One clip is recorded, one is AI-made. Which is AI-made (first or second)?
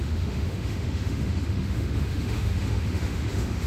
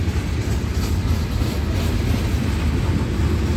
first